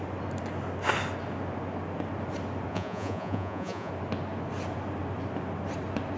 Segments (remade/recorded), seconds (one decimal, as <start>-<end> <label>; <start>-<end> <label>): 0.0-2.7 recorded; 2.7-3.9 remade; 3.9-6.2 recorded